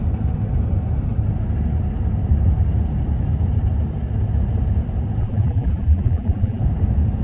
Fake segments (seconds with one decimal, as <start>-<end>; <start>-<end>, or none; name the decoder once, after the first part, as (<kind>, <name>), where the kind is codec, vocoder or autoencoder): 5.2-6.6 (vocoder, BigVGAN v2)